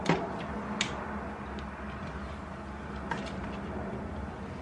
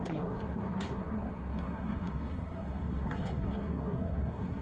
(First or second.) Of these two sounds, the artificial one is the second